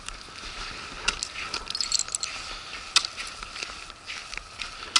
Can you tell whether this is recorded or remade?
recorded